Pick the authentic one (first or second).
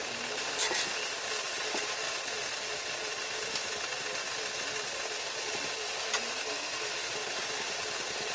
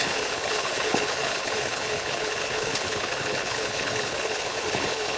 first